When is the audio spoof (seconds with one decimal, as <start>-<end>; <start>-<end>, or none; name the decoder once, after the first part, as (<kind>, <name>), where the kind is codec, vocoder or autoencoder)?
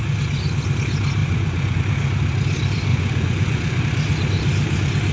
1.2-1.8 (vocoder, Vocos); 2.9-3.8